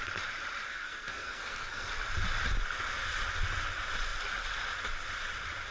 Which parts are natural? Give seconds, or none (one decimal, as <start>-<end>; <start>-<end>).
0.0-0.7; 1.9-5.7